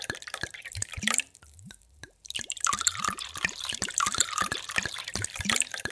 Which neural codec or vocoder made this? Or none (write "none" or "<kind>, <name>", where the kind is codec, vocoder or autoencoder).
vocoder, BigVGAN v2